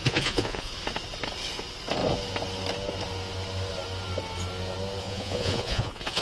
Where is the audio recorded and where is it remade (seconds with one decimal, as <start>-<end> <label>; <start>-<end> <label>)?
0.0-0.7 remade; 0.7-5.0 recorded; 5.0-6.2 remade